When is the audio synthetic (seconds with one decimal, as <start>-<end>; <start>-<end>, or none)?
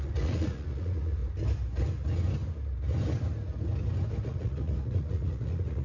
0.0-1.2; 4.2-5.8